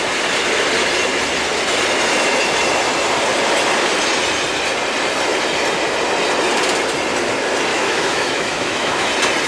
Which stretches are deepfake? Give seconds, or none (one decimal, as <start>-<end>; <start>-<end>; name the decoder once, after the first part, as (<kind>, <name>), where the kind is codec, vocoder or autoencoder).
7.7-9.1 (autoencoder, DAC-VAE)